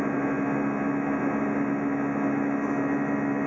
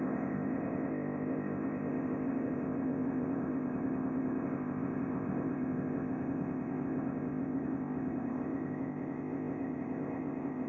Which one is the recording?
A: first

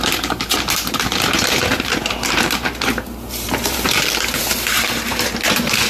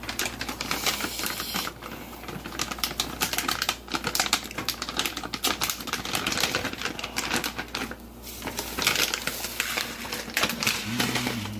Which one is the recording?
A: second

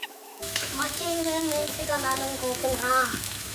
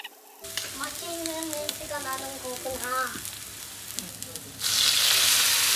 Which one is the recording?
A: second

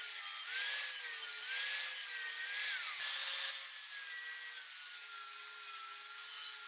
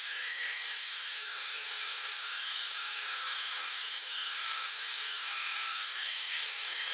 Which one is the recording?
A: first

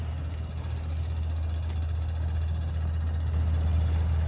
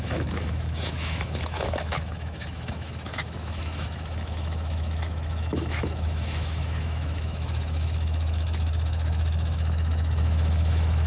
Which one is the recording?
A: first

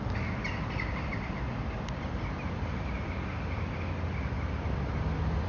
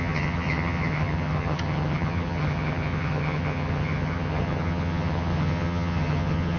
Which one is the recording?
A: first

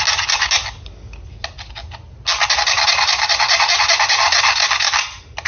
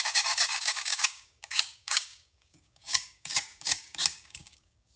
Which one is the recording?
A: first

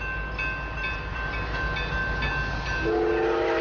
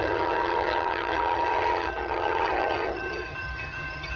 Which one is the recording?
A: first